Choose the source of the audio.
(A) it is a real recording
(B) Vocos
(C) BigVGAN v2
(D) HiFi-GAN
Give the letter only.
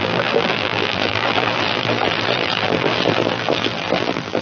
C